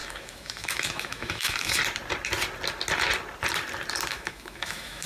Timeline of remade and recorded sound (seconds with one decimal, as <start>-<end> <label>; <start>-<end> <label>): 0.0-1.8 remade; 1.8-4.1 recorded; 4.1-5.1 remade